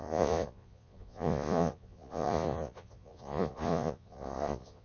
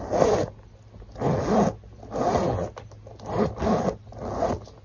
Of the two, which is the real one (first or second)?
second